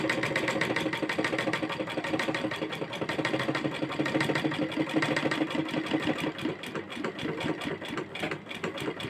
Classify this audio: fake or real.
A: real